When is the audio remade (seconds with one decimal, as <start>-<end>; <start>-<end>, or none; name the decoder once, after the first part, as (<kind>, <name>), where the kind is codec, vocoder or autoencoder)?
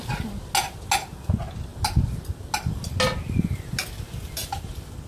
none